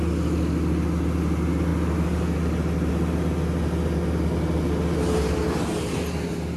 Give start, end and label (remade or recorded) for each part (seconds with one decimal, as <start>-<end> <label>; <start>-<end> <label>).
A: 0.0-6.6 recorded